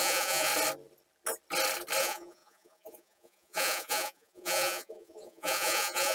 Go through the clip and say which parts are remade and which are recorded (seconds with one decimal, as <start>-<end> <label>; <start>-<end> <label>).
0.0-0.5 remade; 0.5-2.0 recorded; 2.0-6.1 remade